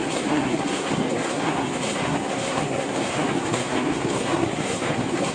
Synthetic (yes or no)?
yes